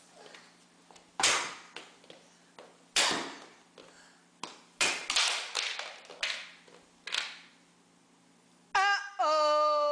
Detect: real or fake real